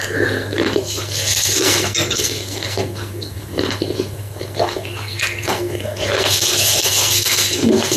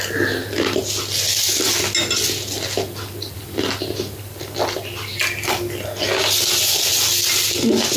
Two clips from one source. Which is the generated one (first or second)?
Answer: first